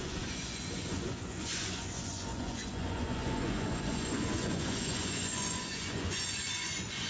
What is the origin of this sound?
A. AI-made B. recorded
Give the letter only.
A